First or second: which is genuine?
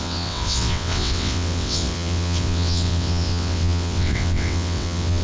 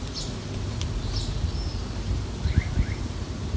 second